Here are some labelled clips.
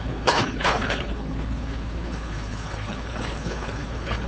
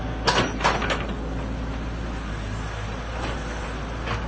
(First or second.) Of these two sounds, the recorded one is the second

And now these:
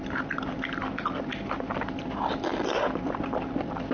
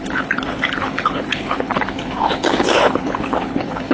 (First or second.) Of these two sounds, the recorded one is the first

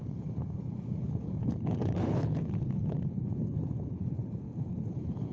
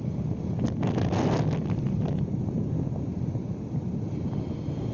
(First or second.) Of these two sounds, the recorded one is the second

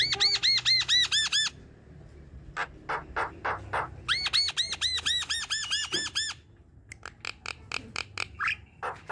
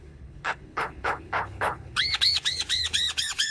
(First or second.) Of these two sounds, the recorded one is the first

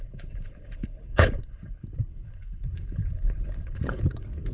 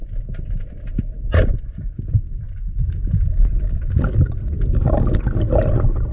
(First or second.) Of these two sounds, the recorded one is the second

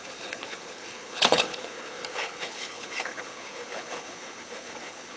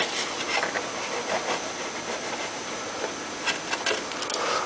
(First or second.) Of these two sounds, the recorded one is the second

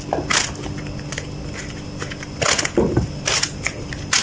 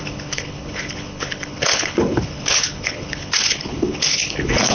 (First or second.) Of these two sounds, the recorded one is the first